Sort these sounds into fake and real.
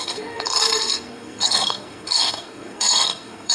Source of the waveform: fake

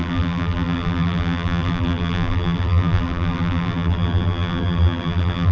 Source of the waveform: fake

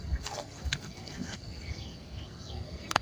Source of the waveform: fake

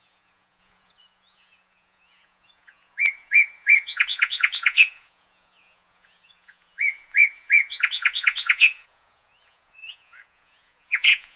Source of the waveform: fake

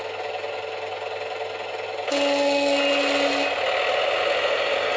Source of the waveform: real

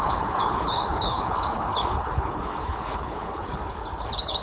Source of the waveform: fake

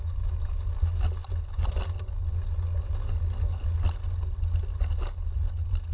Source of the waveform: real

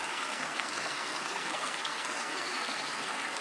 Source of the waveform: fake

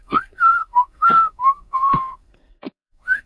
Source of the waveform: fake